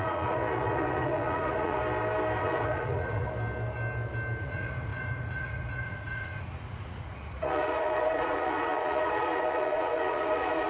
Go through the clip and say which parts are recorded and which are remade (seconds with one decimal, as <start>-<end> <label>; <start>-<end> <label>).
0.0-1.8 remade; 1.8-2.4 recorded; 2.4-3.3 remade; 3.3-4.4 recorded; 4.4-10.7 remade